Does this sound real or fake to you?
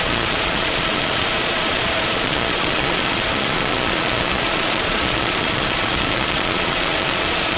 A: fake